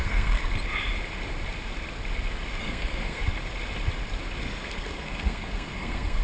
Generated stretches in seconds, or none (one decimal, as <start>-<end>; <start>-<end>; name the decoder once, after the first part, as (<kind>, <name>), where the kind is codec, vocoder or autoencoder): 0.0-0.4 (codec, SNAC); 2.6-3.2; 4.4-6.2